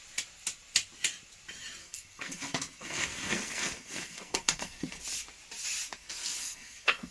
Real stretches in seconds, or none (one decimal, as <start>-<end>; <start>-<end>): 0.0-1.8; 5.0-5.9